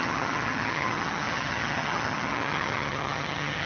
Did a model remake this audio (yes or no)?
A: yes